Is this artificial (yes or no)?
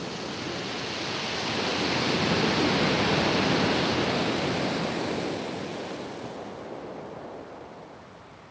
no